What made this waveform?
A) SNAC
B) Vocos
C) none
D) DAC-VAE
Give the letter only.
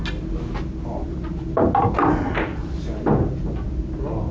C